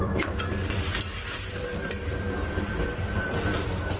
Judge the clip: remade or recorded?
remade